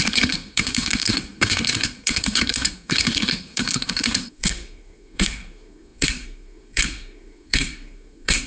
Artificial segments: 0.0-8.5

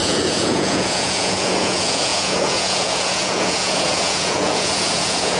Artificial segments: 0.0-5.4

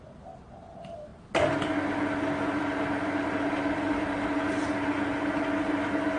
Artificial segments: none